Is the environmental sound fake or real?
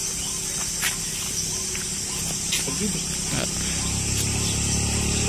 real